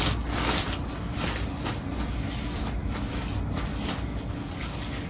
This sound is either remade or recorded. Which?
recorded